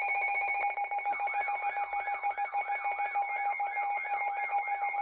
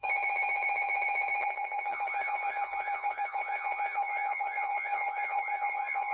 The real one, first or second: first